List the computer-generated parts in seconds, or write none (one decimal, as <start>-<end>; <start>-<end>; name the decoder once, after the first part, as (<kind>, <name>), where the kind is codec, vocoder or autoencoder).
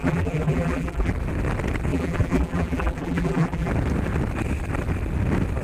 0.0-1.1 (vocoder, BigVGAN v2); 1.9-3.7